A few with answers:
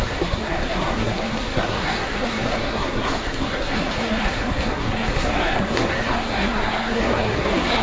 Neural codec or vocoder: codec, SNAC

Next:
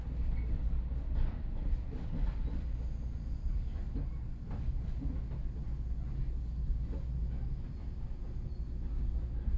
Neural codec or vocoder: none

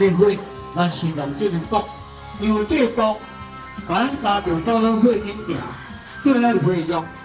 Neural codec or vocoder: codec, SNAC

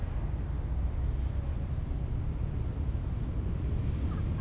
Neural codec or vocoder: none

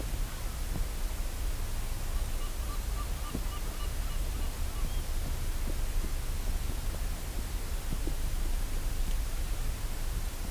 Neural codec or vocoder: none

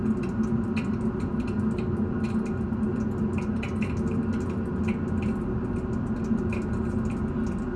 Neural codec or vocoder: none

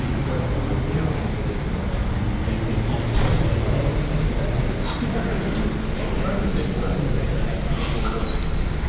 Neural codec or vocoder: none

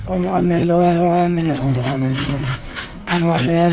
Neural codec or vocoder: codec, SNAC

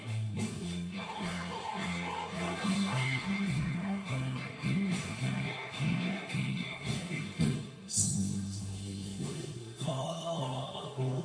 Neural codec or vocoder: codec, SNAC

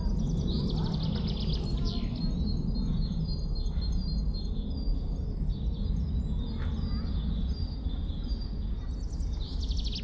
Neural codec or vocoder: none